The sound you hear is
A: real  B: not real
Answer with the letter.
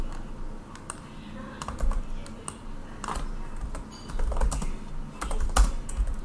A